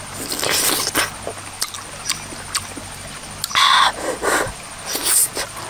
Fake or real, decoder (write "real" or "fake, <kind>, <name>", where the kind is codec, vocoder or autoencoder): real